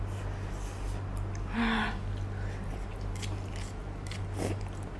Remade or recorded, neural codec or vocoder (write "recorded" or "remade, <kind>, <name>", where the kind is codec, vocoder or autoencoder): recorded